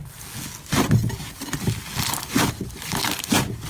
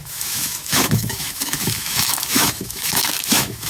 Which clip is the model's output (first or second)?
second